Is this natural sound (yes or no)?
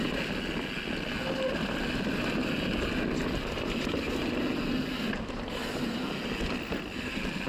yes